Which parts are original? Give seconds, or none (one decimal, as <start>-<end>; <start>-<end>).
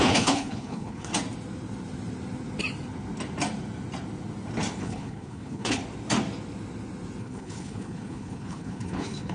1.1-4.8; 5.8-7.2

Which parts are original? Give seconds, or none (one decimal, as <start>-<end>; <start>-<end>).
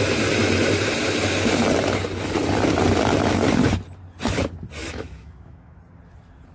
0.0-4.8; 5.8-6.5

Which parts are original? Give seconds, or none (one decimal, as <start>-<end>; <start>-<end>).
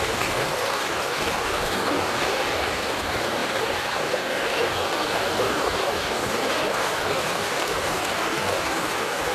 none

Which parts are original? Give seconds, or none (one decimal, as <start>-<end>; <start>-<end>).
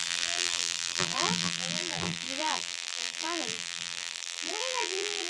none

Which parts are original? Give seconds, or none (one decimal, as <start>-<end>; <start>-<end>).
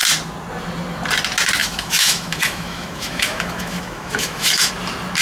0.0-1.6; 4.7-5.2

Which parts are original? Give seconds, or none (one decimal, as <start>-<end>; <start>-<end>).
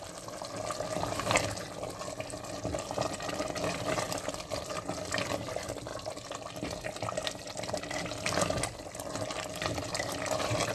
0.0-10.7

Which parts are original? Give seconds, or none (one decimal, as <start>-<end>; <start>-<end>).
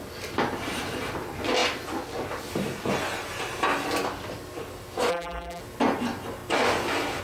0.0-5.1; 5.6-7.2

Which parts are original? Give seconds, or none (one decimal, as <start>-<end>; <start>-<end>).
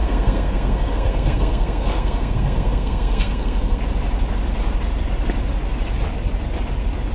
3.8-7.1